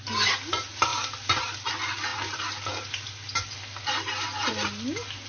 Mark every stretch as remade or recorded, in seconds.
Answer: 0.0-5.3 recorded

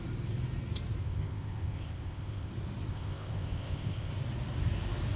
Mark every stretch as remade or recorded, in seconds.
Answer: 0.0-1.0 recorded; 1.0-2.5 remade; 2.5-2.9 recorded; 2.9-4.1 remade; 4.1-5.2 recorded

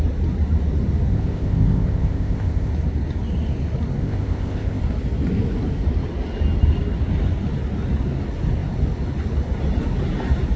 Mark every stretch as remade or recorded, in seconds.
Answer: 0.0-1.1 recorded; 1.1-2.7 remade; 2.7-4.0 recorded; 4.0-4.8 remade; 4.8-10.6 recorded

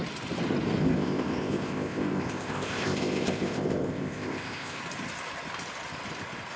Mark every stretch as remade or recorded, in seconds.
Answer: 0.0-0.8 recorded; 0.8-4.8 remade; 4.8-6.6 recorded

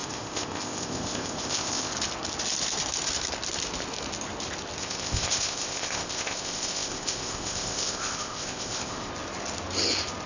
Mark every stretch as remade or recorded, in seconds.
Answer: 0.0-1.9 remade; 1.9-4.8 recorded; 4.8-9.1 remade; 9.1-10.3 recorded

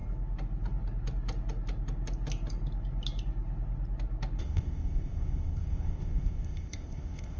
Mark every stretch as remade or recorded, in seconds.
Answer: 0.0-4.4 recorded; 4.4-7.4 remade